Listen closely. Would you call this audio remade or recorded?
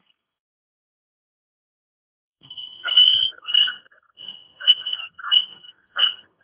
remade